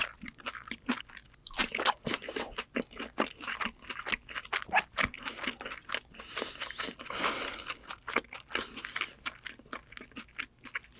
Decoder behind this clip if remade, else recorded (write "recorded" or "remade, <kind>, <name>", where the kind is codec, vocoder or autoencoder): recorded